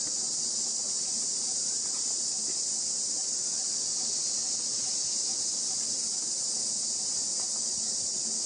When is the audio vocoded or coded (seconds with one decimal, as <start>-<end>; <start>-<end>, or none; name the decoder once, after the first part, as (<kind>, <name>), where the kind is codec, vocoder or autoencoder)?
none